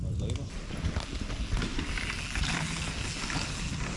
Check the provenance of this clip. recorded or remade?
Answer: recorded